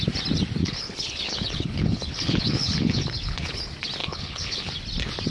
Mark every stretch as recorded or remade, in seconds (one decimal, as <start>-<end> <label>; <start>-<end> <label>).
0.0-0.6 recorded; 0.6-3.6 remade; 3.6-4.0 recorded; 4.0-4.7 remade; 4.7-5.3 recorded